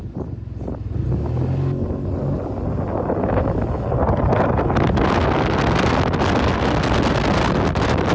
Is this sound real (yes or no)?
yes